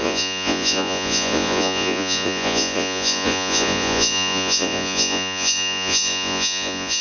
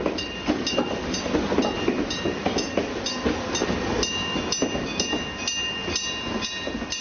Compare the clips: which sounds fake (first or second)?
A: first